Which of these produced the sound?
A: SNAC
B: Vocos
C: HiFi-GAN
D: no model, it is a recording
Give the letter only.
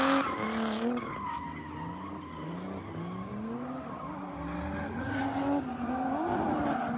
D